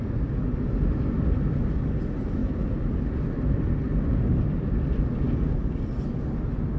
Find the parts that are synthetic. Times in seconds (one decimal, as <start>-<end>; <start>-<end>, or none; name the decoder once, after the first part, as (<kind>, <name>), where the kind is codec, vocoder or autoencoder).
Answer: none